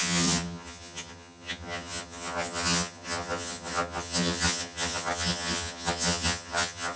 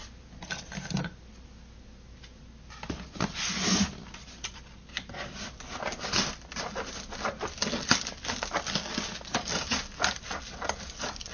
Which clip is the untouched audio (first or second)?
second